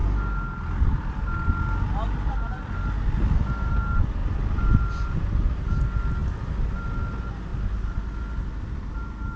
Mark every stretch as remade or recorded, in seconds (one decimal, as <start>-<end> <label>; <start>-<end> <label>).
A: 0.0-4.2 recorded; 4.2-5.7 remade; 5.7-9.4 recorded